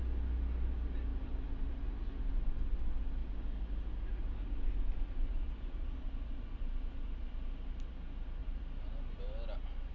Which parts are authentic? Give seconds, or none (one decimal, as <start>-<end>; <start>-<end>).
0.0-9.9